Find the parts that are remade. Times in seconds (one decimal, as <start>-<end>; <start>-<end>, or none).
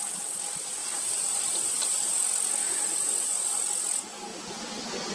0.8-2.2; 2.6-3.7